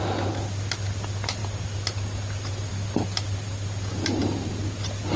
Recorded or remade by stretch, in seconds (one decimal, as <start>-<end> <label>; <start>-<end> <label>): 0.0-5.2 recorded